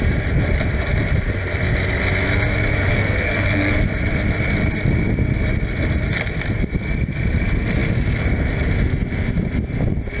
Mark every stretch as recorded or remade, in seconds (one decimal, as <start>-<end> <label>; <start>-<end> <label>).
0.0-2.9 recorded; 2.9-3.7 remade; 3.7-10.2 recorded